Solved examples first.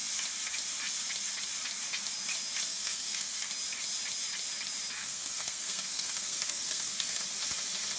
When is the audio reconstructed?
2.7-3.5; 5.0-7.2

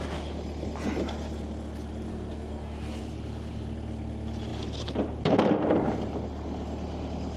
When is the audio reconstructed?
2.1-3.0

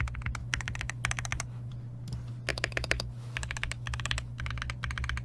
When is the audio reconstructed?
0.4-1.7; 2.5-4.5

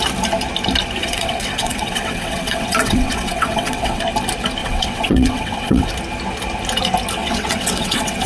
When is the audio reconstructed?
1.0-4.0; 4.6-5.9; 7.2-8.3

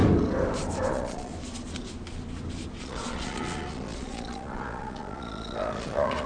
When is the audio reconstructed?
0.9-1.3; 2.8-6.3

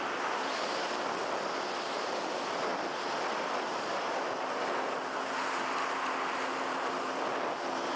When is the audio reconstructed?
none

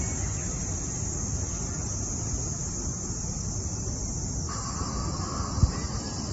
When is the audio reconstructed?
2.9-3.4

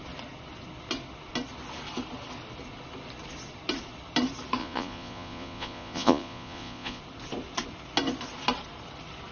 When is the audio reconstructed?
4.6-7.0